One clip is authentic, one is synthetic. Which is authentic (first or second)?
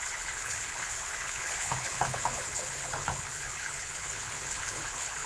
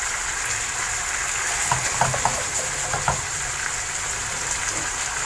second